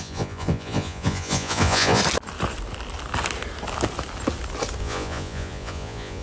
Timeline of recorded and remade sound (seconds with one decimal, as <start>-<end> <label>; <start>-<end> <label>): 0.0-2.0 remade; 2.0-4.8 recorded; 4.8-6.2 remade